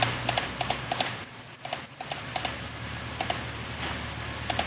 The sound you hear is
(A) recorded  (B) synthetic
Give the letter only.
A